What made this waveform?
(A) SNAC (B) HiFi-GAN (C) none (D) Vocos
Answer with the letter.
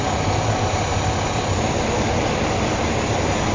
C